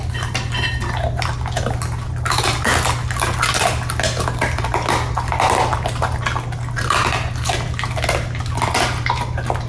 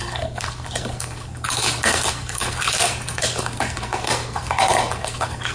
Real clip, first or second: first